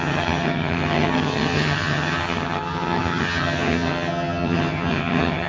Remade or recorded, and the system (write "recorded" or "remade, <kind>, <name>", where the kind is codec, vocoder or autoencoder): remade, vocoder, HiFi-GAN